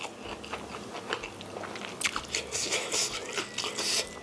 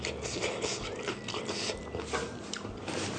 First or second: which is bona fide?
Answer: first